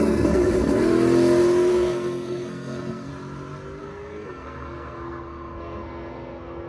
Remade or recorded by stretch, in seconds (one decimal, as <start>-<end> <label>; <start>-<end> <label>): 0.0-0.9 remade; 0.9-1.7 recorded; 1.7-3.1 remade; 3.1-3.8 recorded; 3.8-6.7 remade